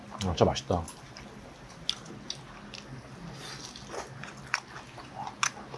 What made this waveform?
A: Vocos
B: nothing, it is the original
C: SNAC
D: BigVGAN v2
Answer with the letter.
B